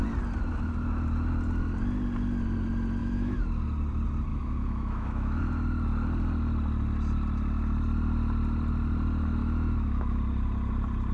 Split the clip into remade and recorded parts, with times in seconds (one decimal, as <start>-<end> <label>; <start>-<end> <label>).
0.0-3.0 recorded; 3.0-3.5 remade; 3.5-4.3 recorded; 4.3-5.4 remade; 5.4-9.4 recorded; 9.4-10.2 remade; 10.2-11.1 recorded